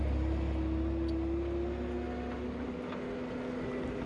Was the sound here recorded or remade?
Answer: recorded